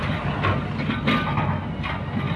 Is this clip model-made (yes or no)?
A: no